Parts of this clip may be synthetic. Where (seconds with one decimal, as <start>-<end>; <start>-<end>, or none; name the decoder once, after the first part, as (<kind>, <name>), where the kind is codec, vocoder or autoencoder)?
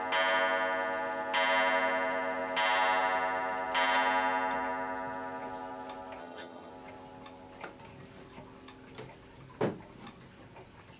6.2-6.7 (vocoder, HiFi-GAN)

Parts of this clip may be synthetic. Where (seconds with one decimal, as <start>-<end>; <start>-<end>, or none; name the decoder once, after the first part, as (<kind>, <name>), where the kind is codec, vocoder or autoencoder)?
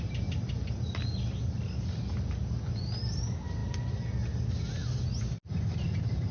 none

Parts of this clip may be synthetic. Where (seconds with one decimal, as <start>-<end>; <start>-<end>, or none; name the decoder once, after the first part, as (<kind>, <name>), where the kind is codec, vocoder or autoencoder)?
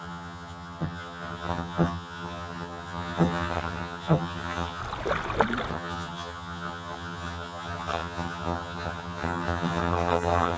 0.0-4.8 (vocoder, HiFi-GAN); 5.7-10.6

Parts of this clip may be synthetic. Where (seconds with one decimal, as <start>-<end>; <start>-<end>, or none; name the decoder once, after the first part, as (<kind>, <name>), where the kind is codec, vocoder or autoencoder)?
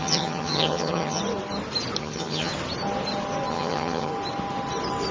0.0-1.2 (vocoder, HiFi-GAN); 2.0-2.5; 3.5-4.1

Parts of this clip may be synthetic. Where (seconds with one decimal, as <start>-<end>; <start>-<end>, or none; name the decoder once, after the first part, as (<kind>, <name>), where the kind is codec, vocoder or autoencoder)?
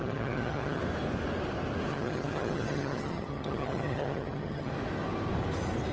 0.0-0.8 (vocoder, HiFi-GAN); 1.9-4.7